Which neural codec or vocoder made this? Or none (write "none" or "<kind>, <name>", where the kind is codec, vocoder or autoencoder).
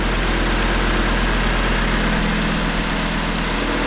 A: none